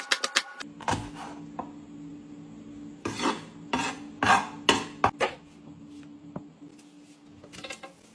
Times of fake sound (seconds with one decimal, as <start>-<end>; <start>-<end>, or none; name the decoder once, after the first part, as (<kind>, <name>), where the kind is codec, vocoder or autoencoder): none